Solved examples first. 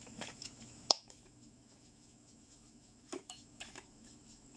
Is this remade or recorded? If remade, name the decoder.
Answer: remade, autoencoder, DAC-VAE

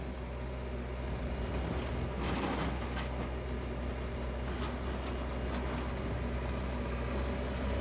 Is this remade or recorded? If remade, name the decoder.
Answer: recorded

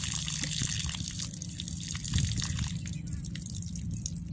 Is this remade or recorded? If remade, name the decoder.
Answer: remade, vocoder, BigVGAN v2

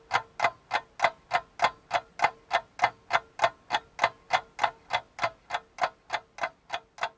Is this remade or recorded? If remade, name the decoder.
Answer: recorded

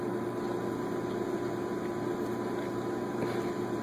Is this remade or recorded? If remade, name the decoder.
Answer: recorded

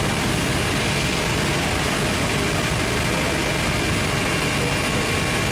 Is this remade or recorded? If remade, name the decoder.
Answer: recorded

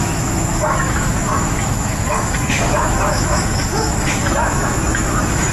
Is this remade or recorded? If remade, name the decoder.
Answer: remade, autoencoder, DAC-VAE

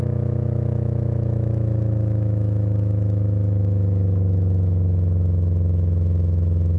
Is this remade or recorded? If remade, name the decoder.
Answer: remade, autoencoder, DAC-VAE